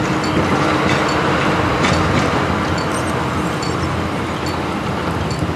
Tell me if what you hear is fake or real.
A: real